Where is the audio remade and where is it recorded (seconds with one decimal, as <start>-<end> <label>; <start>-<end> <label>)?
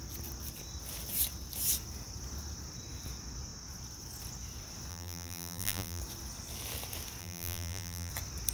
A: 0.0-4.9 recorded; 4.9-6.0 remade; 6.0-7.2 recorded; 7.2-8.1 remade; 8.1-8.5 recorded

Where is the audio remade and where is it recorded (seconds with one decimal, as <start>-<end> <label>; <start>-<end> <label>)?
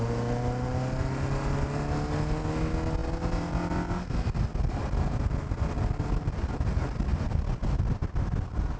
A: 0.0-8.8 recorded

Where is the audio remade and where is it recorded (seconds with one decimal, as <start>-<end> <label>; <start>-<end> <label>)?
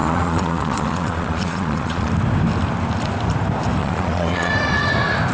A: 0.0-2.1 remade; 2.1-3.8 recorded; 3.8-4.5 remade; 4.5-5.3 recorded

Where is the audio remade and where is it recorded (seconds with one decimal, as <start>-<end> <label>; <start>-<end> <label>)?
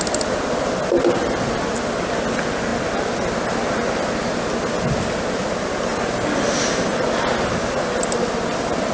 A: 0.0-8.9 recorded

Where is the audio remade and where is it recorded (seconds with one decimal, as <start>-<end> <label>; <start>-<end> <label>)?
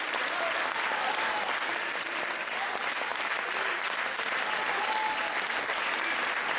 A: 0.0-6.6 recorded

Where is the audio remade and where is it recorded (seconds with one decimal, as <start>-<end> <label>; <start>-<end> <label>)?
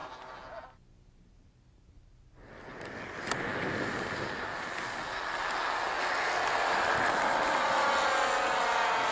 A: 0.0-9.1 recorded